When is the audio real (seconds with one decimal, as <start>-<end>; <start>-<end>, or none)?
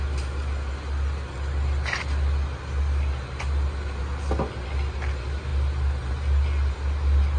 0.0-7.4